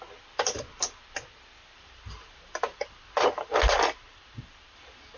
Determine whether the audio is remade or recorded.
recorded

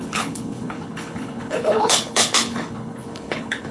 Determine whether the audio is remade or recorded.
remade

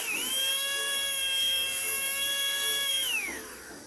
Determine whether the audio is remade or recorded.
remade